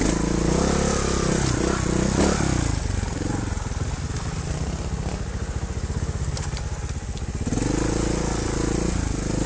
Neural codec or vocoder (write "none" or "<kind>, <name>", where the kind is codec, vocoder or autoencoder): none